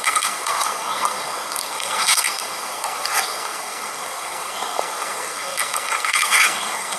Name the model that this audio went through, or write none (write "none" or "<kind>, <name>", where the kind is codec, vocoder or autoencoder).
codec, SNAC